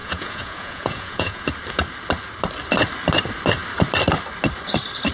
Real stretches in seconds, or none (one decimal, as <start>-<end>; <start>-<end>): 1.4-5.1